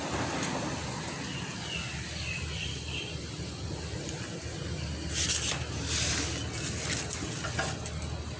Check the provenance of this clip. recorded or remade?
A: recorded